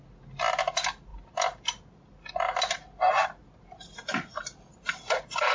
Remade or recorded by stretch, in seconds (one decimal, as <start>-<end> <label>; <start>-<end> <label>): 0.0-5.5 recorded